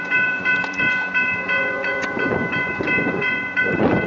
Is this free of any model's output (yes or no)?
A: no